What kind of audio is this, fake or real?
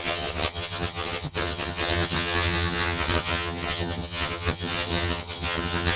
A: fake